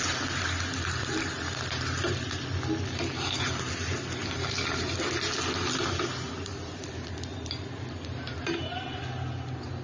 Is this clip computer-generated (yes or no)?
no